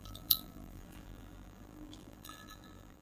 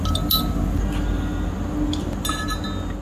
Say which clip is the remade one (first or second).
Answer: first